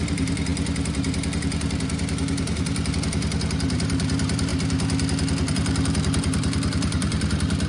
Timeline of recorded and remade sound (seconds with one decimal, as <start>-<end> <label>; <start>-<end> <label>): 0.0-4.5 remade; 4.5-5.5 recorded; 5.5-7.7 remade